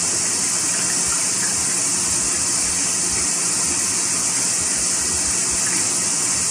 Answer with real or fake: real